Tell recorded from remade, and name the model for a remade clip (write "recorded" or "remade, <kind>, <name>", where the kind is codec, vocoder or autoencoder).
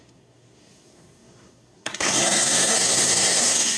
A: remade, codec, SNAC